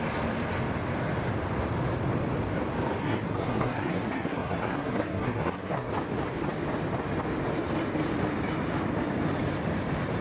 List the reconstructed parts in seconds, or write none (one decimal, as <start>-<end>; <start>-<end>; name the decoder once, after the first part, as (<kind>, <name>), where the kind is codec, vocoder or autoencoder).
3.0-5.9 (codec, SNAC)